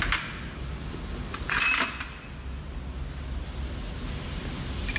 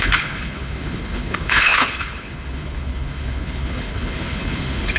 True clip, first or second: first